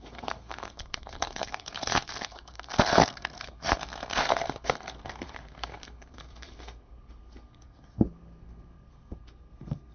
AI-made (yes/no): yes